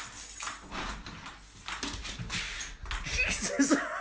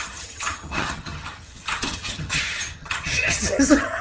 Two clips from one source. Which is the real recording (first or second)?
first